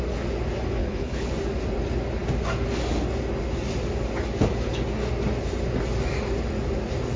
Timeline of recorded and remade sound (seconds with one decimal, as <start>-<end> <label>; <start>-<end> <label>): 0.0-0.8 recorded; 0.8-1.3 remade; 1.3-7.2 recorded